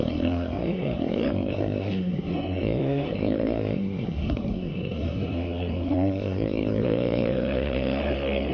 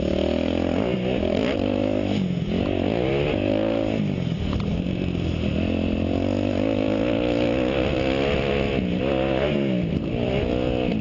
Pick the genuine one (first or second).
second